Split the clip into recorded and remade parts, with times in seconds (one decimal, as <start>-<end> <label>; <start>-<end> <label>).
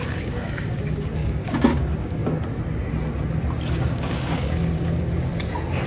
0.0-2.2 remade; 2.2-3.7 recorded; 3.7-5.3 remade; 5.3-5.9 recorded